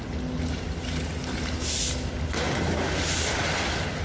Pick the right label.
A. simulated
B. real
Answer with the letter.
B